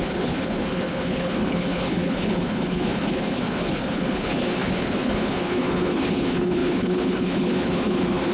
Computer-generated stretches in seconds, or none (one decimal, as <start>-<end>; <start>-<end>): 0.0-8.3